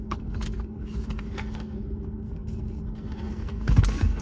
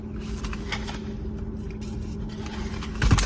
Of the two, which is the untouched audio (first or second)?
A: second